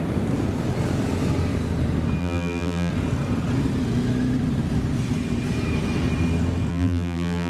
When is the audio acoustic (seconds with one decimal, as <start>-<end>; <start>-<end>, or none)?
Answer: 0.0-2.2; 2.9-6.7